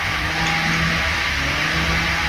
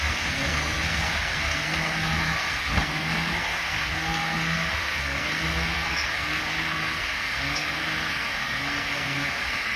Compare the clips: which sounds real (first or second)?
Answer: first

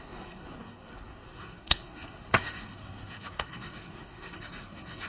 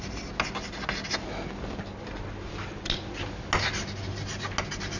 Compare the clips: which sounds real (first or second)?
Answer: second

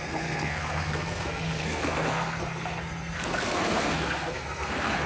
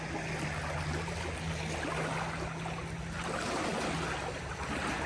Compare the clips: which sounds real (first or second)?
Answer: second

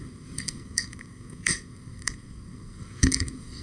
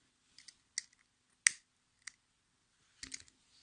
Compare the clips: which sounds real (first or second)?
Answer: second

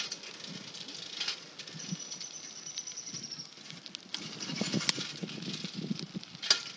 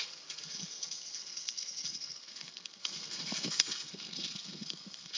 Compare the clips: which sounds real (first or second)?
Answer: first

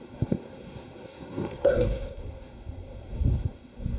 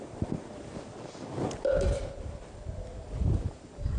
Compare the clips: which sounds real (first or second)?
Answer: second